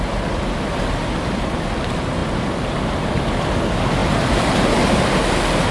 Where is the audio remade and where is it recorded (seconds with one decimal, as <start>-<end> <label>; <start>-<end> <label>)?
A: 0.0-5.7 recorded